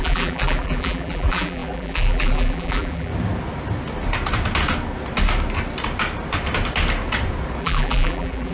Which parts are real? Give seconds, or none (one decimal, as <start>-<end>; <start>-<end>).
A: 3.1-7.6

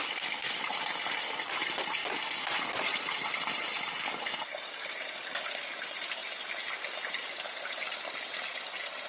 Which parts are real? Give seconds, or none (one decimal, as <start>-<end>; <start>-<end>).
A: 2.0-2.7; 6.2-7.6

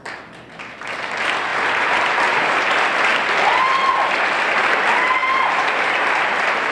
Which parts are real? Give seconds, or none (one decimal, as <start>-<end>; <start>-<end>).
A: 0.0-1.5; 2.7-5.2

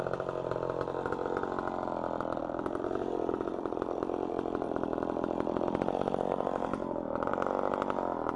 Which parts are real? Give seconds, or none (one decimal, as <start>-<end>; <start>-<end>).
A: 0.0-2.4; 7.3-8.4

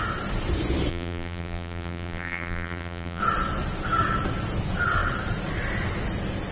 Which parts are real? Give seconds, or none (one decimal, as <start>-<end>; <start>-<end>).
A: 0.0-0.9; 3.2-6.5

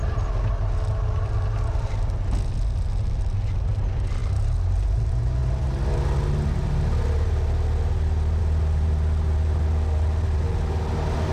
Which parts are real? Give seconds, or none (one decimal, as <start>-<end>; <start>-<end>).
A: 0.0-11.3

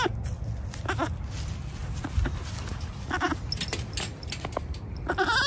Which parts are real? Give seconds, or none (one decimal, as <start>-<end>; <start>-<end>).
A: 0.0-5.5

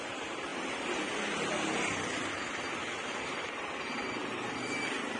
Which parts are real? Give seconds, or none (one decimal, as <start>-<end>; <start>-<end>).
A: 0.0-4.2; 4.7-5.2